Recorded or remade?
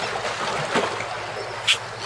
recorded